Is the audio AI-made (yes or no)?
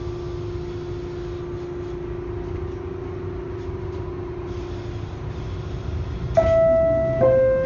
no